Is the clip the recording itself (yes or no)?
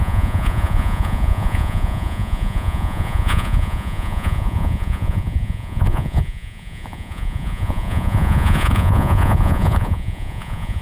no